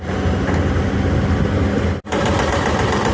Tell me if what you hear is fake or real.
real